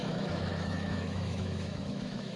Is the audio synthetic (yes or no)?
yes